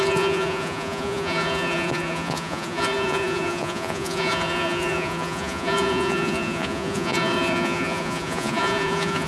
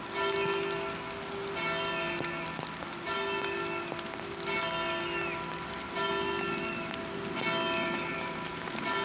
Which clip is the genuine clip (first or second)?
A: second